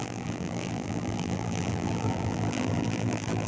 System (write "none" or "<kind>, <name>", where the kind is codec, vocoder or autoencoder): vocoder, BigVGAN v2